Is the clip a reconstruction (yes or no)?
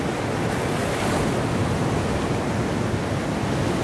no